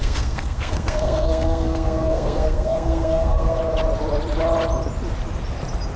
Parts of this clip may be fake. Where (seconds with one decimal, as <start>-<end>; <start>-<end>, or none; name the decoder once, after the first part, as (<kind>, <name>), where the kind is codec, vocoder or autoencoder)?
0.0-3.6 (codec, SNAC)